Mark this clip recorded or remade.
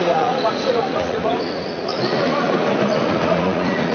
remade